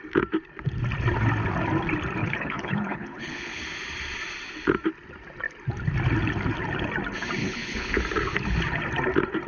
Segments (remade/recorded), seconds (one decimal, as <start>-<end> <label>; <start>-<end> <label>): 0.0-2.2 recorded; 2.2-3.6 remade; 3.6-7.4 recorded; 7.4-8.0 remade; 8.0-9.5 recorded